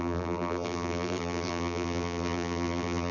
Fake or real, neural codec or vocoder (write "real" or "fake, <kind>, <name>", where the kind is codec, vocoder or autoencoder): fake, vocoder, BigVGAN v2